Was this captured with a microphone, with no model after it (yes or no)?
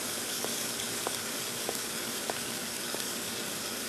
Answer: no